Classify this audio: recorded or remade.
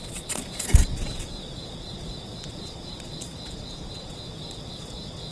remade